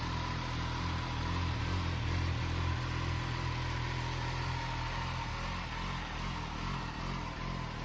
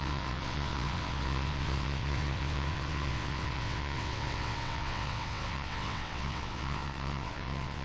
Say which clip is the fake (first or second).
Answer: second